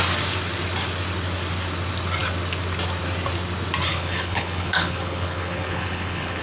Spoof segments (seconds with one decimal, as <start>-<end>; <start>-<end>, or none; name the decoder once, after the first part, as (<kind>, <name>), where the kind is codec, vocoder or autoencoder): 3.9-6.4 (codec, HILCodec)